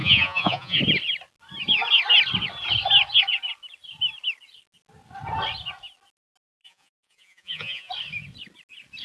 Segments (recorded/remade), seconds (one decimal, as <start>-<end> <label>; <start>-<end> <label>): 0.0-0.8 remade; 0.8-6.6 recorded; 6.6-7.9 remade; 7.9-9.0 recorded